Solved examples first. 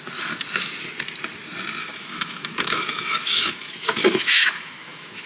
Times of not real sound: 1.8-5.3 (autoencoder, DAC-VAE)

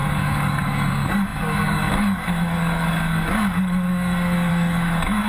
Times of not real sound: 0.0-5.3 (codec, DAC)

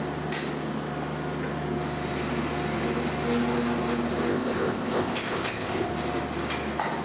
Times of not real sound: 4.3-5.9 (codec, ZipCodec)

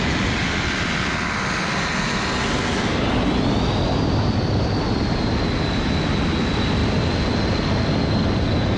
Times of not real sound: none

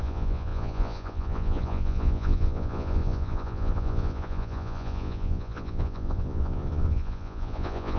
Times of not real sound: 0.0-8.0 (vocoder, Vocos)

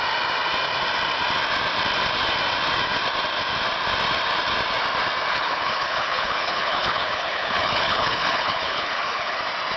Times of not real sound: 5.3-9.4 (codec, HILCodec)

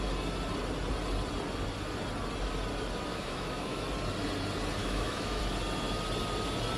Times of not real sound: 3.1-3.8 (autoencoder, DAC-VAE); 4.8-5.4

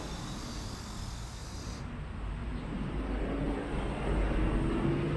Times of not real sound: 1.4-2.0 (vocoder, BigVGAN v2); 2.4-3.0